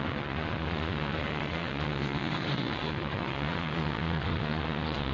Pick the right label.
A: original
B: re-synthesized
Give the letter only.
B